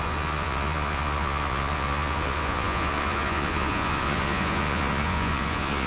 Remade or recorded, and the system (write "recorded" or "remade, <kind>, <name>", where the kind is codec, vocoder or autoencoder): remade, vocoder, Vocos